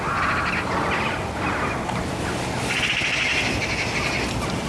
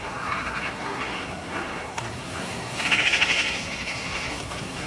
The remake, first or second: second